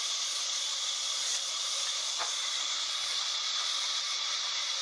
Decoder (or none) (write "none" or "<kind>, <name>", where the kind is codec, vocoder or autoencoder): vocoder, Vocos